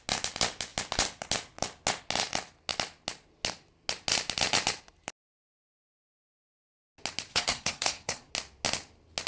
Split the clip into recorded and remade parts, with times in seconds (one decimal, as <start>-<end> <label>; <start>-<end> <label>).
0.0-7.3 recorded; 7.3-8.3 remade; 8.3-9.3 recorded